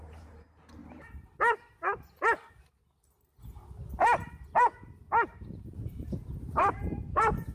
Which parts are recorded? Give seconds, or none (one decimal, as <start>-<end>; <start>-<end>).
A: 0.8-5.3